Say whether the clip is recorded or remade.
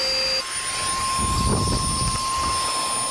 recorded